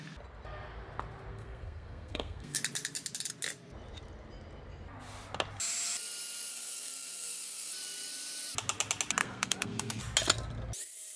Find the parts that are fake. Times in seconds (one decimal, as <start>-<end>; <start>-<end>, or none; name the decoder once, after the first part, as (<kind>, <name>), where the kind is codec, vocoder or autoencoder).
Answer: 1.3-2.6 (codec, SNAC); 6.5-7.7; 9.2-10.0